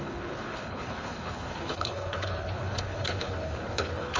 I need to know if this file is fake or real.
fake